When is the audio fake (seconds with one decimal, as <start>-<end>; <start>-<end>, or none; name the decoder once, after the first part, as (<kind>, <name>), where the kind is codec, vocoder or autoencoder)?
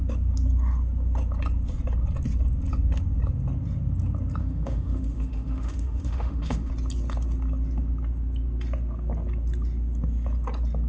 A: 4.4-6.7 (autoencoder, DAC-VAE)